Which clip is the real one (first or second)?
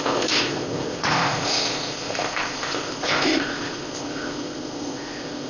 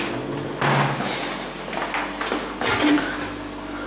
second